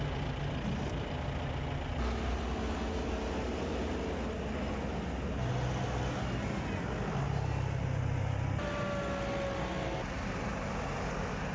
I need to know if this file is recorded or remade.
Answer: recorded